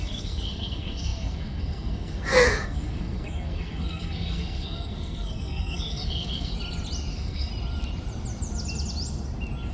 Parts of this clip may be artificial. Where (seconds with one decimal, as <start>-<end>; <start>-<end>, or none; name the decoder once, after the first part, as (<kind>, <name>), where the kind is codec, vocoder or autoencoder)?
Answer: 0.0-6.5 (codec, SNAC); 7.1-7.5